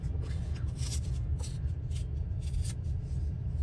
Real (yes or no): yes